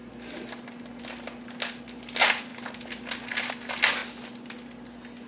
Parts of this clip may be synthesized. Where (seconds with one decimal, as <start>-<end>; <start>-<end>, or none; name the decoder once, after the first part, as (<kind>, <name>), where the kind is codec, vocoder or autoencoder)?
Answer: none